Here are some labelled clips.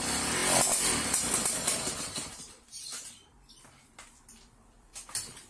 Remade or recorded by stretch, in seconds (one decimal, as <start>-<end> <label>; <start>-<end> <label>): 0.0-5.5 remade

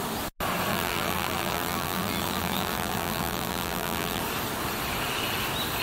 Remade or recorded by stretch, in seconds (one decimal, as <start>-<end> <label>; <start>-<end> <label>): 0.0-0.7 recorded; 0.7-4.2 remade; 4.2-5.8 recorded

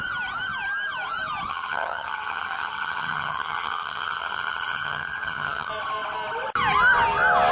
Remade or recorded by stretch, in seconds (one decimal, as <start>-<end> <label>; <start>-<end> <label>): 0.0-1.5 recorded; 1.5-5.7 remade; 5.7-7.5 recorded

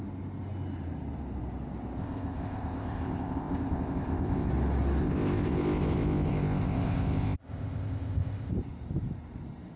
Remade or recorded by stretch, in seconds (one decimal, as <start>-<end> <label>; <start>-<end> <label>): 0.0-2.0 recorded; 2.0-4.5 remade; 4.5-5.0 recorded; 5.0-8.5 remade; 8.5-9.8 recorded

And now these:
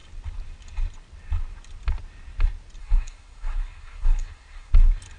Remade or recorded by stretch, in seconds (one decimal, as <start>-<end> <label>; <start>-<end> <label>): 0.0-2.8 recorded; 2.8-4.7 remade; 4.7-5.2 recorded

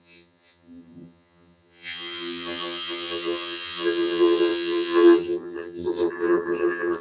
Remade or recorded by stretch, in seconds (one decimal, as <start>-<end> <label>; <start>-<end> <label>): 0.0-7.0 remade

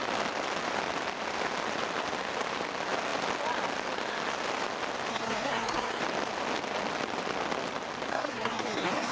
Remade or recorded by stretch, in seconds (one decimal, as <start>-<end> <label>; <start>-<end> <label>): 0.0-5.1 recorded; 5.1-6.0 remade; 6.0-8.1 recorded; 8.1-9.1 remade

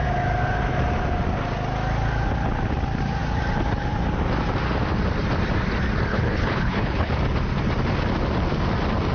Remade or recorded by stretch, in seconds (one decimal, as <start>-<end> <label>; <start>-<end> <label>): 0.0-6.1 recorded; 6.1-7.1 remade; 7.1-9.1 recorded